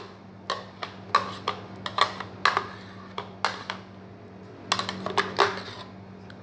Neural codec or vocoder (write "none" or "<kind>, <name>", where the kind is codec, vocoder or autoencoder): none